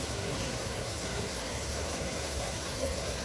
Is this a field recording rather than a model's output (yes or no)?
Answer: no